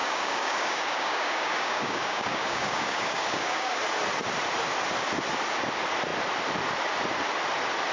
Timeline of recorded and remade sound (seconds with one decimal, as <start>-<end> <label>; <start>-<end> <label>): 0.0-3.8 remade; 3.8-7.9 recorded